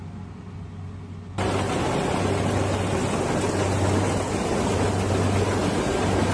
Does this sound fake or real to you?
real